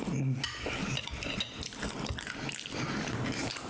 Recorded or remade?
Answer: recorded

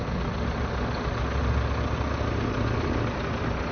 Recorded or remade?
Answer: recorded